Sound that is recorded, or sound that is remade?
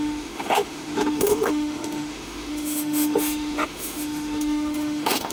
remade